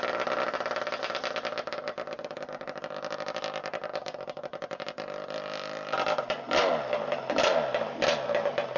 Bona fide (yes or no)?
yes